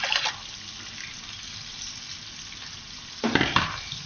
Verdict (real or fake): real